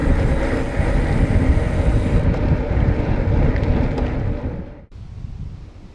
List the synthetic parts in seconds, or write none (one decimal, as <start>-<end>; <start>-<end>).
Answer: none